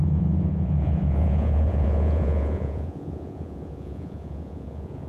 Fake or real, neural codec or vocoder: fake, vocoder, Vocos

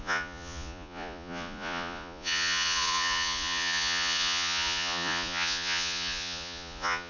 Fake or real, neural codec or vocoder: fake, vocoder, Vocos